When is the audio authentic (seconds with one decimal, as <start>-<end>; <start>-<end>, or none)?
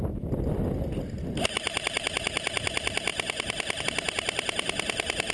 0.0-3.1; 3.8-5.3